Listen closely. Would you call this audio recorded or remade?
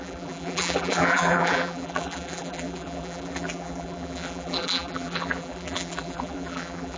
remade